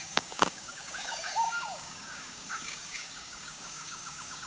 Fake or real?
fake